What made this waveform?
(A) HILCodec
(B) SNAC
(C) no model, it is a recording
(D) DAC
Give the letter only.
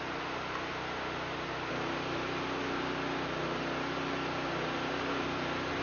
C